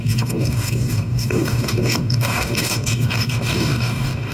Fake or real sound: fake